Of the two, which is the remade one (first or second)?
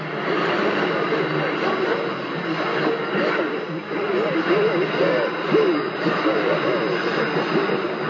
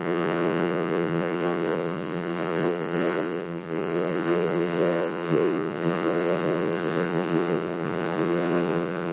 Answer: second